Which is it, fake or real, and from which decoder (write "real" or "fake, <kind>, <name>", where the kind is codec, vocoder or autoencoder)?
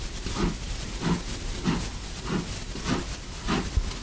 real